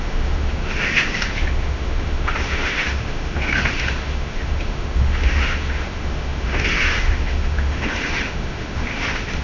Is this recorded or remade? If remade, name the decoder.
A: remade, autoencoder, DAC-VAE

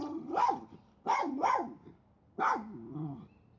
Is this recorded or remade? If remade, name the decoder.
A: recorded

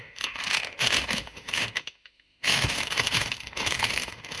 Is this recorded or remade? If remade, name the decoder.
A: remade, autoencoder, DAC-VAE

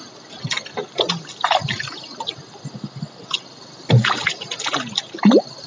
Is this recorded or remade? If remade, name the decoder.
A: recorded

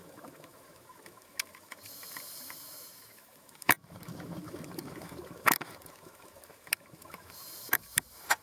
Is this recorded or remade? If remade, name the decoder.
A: remade, autoencoder, DAC-VAE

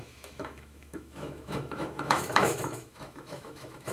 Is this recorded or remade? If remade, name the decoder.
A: remade, autoencoder, DAC-VAE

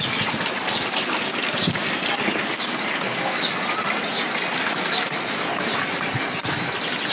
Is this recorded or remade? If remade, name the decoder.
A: recorded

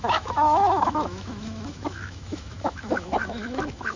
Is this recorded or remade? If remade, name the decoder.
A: remade, autoencoder, DAC-VAE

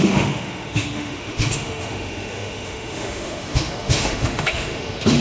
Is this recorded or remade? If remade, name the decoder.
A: remade, autoencoder, DAC-VAE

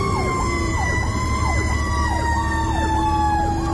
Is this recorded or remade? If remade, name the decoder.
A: recorded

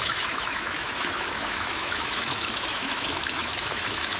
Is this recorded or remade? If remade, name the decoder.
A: remade, autoencoder, DAC-VAE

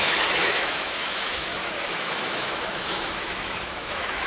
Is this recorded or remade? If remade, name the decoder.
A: remade, autoencoder, DAC-VAE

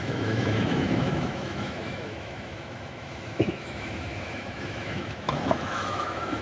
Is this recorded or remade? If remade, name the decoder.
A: remade, autoencoder, DAC-VAE